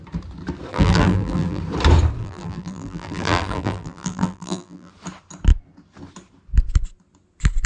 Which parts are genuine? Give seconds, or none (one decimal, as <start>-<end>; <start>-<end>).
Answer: 0.0-0.7; 1.6-2.2; 4.9-7.7